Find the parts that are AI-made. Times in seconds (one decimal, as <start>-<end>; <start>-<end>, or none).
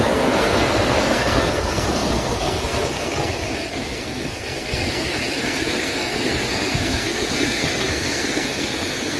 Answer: 0.0-9.2